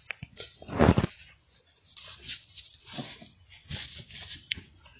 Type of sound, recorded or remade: remade